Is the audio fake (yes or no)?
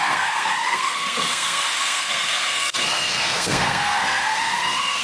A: yes